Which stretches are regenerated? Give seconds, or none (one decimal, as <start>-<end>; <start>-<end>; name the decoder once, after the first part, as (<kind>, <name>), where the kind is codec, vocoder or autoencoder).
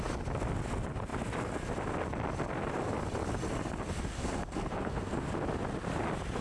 4.1-5.1 (codec, SNAC)